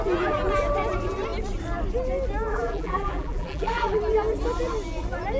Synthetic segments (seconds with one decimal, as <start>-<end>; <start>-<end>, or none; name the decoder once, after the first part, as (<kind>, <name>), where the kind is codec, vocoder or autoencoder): 2.5-4.0 (vocoder, BigVGAN v2)